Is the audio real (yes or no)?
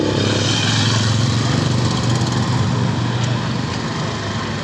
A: yes